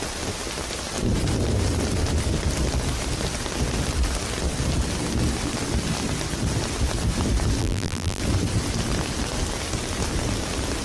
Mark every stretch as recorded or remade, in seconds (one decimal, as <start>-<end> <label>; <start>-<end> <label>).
0.0-7.6 recorded; 7.6-8.2 remade; 8.2-10.8 recorded